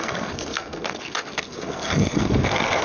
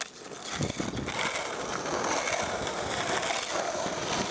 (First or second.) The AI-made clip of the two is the first